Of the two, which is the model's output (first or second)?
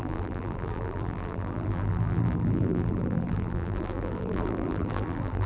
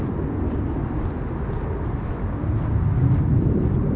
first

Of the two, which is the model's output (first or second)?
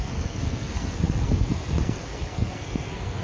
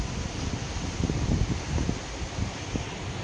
first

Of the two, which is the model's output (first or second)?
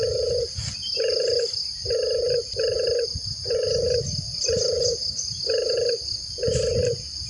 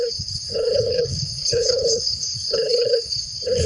second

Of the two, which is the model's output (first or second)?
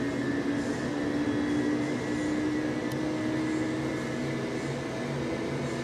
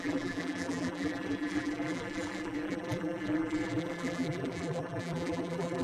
second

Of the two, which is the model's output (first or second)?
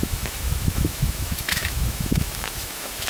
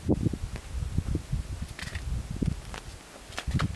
first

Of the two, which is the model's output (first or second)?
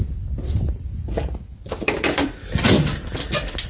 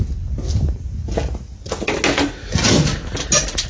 first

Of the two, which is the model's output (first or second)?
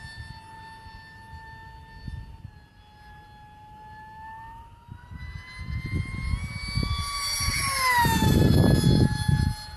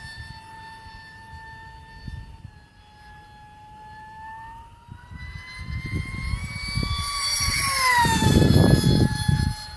second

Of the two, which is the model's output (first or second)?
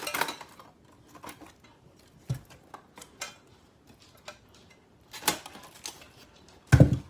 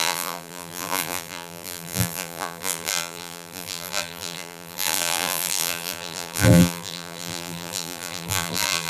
second